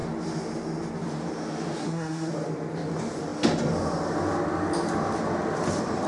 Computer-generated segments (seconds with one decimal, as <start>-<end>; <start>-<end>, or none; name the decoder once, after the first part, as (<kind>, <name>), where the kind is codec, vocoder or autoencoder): 1.8-2.3 (codec, SNAC)